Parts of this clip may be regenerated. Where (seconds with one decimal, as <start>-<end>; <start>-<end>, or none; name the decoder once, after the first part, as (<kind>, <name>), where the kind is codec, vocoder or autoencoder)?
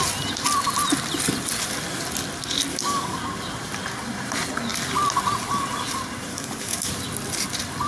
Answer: 2.7-3.2 (codec, DAC); 6.3-6.9